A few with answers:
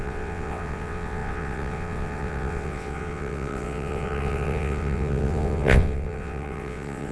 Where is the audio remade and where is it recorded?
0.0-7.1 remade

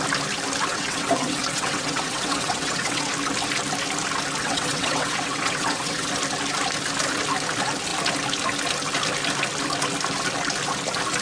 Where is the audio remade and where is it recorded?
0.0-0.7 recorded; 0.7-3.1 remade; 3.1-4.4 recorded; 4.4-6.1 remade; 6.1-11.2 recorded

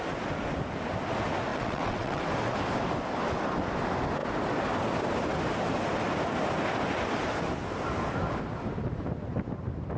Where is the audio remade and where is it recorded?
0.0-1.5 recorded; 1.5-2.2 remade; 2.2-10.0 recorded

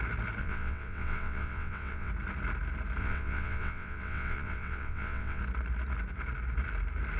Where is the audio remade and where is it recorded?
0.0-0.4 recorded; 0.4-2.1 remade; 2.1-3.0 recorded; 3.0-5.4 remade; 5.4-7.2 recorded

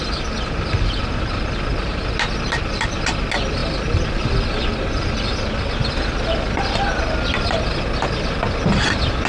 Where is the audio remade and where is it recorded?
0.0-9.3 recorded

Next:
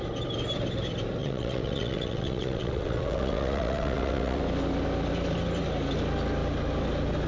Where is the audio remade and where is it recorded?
0.0-1.2 recorded; 1.2-4.4 remade; 4.4-7.3 recorded